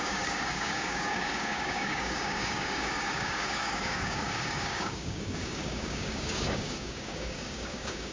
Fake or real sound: fake